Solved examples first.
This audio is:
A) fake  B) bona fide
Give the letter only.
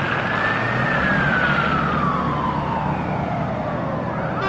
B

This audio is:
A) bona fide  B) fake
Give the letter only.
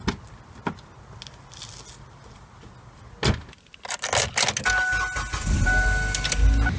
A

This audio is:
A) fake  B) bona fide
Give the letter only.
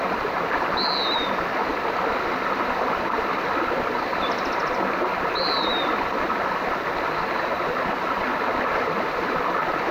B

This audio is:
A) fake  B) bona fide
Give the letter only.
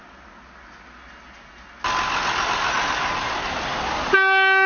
B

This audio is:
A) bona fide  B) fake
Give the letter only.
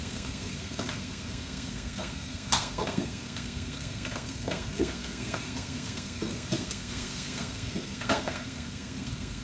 B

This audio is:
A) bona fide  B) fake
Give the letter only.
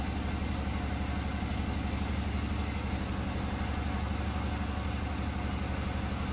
A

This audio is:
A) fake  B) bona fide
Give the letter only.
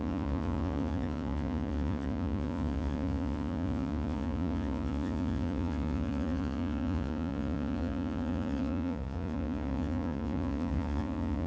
A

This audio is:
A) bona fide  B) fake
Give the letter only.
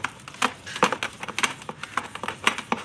A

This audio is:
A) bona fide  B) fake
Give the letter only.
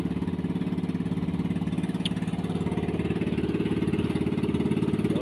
A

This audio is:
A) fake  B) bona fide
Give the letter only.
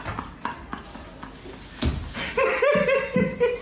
B